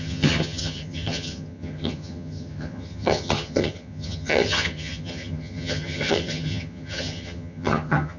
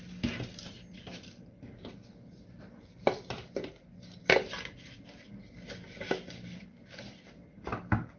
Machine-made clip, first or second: first